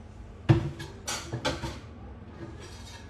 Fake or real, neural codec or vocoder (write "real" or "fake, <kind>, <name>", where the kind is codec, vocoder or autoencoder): real